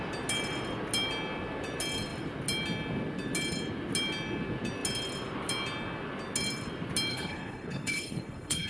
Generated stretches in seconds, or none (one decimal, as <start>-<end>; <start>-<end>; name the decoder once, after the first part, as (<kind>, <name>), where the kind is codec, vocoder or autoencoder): 7.1-8.7 (codec, HILCodec)